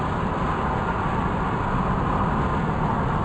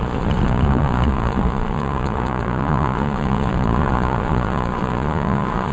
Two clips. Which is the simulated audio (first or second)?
second